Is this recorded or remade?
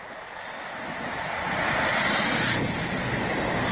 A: recorded